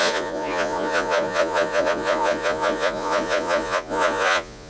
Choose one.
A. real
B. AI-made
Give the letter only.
B